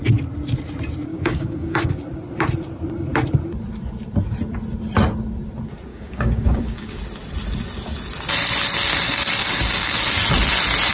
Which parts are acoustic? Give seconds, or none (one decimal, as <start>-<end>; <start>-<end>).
0.0-1.1; 1.9-5.9; 7.0-9.4; 10.0-10.9